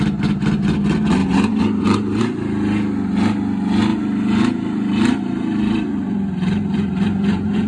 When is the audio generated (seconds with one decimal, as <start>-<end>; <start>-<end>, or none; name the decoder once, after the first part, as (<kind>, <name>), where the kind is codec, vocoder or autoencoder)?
1.2-2.2 (vocoder, BigVGAN v2); 3.9-7.7